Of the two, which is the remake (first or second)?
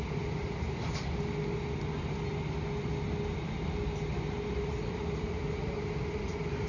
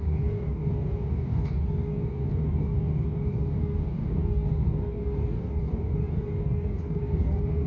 second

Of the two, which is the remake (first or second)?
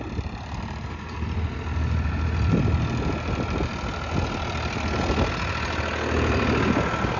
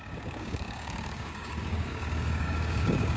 second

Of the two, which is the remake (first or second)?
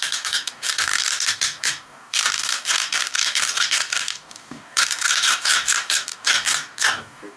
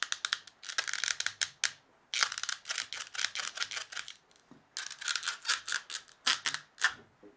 first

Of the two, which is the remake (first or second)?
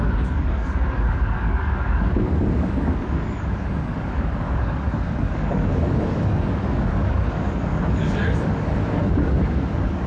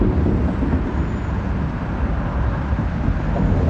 first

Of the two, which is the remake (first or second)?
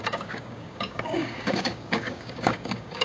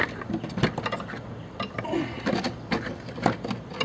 first